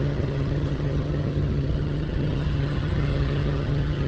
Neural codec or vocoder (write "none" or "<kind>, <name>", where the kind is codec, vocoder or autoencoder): vocoder, HiFi-GAN